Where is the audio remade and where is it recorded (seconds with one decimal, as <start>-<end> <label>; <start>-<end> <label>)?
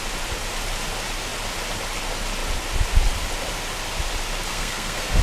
0.0-4.5 recorded; 4.5-5.2 remade